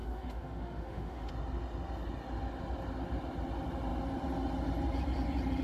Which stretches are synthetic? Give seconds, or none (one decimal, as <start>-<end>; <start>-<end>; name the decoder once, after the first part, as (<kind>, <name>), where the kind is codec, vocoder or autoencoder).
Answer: 0.0-1.3 (autoencoder, DAC-VAE)